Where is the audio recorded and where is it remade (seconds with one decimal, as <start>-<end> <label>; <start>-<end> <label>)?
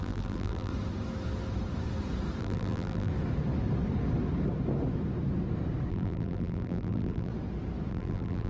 0.0-0.7 remade; 0.7-2.4 recorded; 2.4-3.1 remade; 3.1-5.9 recorded; 5.9-7.3 remade; 7.3-7.9 recorded; 7.9-8.5 remade